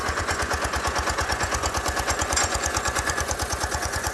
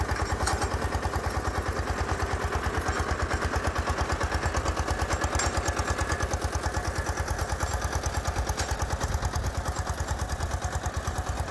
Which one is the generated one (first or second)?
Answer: first